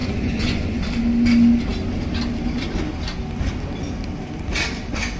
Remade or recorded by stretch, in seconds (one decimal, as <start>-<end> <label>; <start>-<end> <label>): 0.0-0.8 remade; 0.8-5.2 recorded